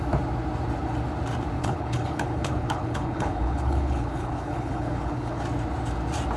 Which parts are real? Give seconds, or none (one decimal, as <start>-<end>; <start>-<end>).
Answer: 0.0-1.6; 5.4-6.4